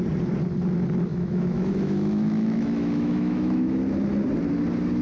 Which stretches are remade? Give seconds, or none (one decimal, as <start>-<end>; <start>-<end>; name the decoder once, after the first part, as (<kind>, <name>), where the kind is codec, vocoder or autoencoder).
1.1-3.8 (autoencoder, DAC-VAE)